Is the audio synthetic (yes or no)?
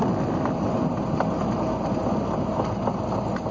no